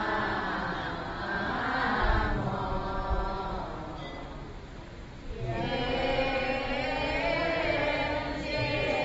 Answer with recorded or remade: recorded